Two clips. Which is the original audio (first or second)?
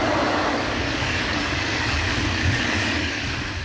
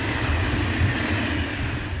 second